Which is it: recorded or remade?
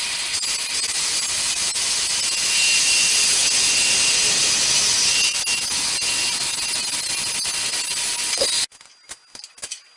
recorded